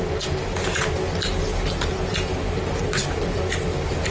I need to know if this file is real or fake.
real